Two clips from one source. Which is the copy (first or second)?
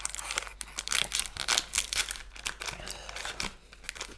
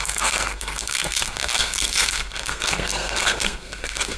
second